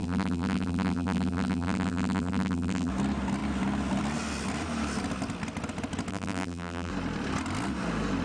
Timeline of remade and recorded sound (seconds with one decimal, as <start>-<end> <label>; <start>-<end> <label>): 0.0-2.9 remade; 2.9-6.1 recorded; 6.1-6.9 remade; 6.9-8.2 recorded